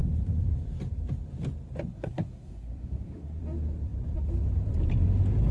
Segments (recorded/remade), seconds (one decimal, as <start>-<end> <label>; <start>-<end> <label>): 0.0-1.9 recorded; 1.9-3.4 remade; 3.4-5.5 recorded